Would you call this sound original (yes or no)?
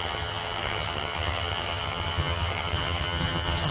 no